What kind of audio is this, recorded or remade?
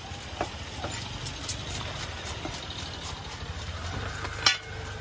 recorded